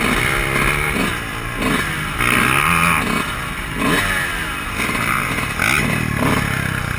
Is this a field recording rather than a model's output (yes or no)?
yes